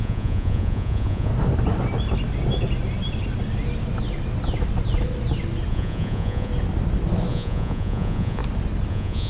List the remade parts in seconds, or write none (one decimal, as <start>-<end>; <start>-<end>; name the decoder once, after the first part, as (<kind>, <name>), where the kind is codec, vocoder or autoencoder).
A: 0.0-1.3 (vocoder, Vocos); 5.7-6.5; 7.3-8.4; 8.9-9.3